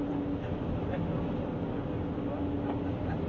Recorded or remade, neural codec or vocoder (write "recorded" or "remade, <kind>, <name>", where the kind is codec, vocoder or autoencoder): recorded